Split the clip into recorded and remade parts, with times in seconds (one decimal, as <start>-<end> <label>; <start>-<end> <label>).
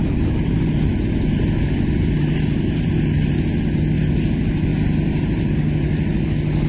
0.0-3.0 remade; 3.0-4.7 recorded; 4.7-5.6 remade; 5.6-6.7 recorded